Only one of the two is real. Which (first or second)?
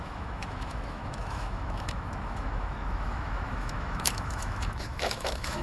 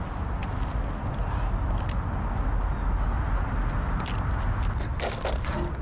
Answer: second